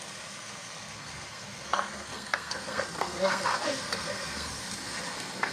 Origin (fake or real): fake